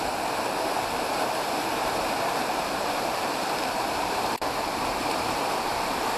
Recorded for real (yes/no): no